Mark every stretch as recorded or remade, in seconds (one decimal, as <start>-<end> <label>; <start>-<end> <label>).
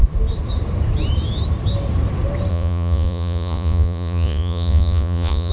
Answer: 0.0-2.5 recorded; 2.5-5.5 remade